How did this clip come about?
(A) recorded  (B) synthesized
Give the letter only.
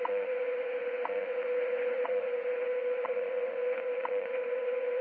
B